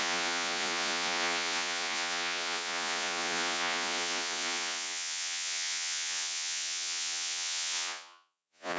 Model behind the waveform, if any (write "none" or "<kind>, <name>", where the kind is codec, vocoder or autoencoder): vocoder, Vocos